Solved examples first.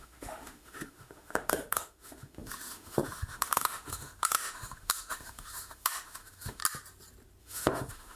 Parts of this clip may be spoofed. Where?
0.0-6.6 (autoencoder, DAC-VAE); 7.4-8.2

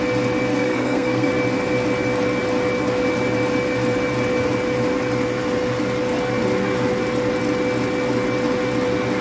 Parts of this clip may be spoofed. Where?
0.5-1.3 (codec, SNAC)

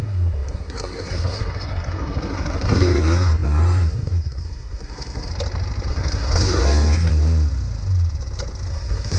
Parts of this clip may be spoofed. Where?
0.0-5.3 (codec, SNAC); 5.9-7.1; 8.7-9.2

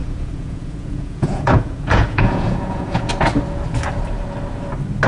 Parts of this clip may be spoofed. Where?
0.0-3.1 (vocoder, Vocos)

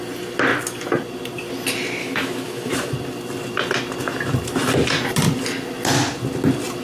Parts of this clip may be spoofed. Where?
2.0-2.7 (autoencoder, DAC-VAE)

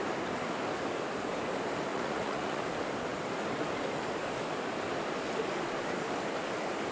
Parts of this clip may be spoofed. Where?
1.9-2.6 (vocoder, Vocos)

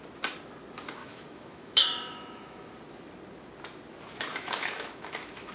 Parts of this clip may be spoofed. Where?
1.0-2.7 (autoencoder, DAC-VAE); 4.3-5.5

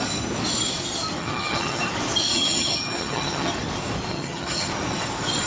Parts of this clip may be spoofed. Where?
1.2-1.8 (vocoder, HiFi-GAN); 2.3-3.5; 4.1-4.7